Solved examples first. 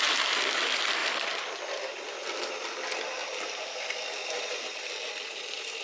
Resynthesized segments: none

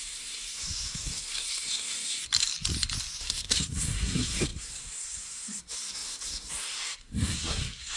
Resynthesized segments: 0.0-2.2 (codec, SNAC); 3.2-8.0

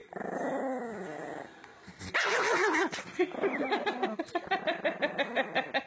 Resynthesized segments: none